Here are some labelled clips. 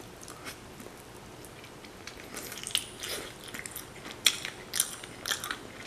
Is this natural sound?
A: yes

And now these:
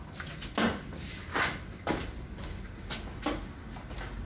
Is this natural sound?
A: yes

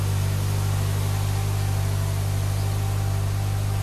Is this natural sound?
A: yes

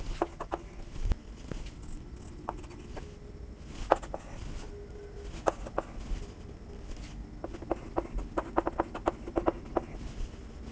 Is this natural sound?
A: yes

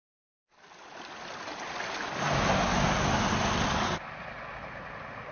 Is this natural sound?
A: yes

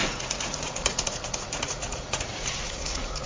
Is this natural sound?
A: no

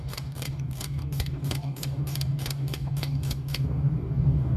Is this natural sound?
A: no